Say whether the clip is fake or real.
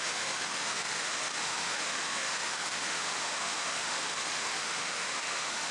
fake